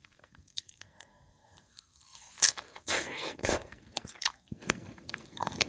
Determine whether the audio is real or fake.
fake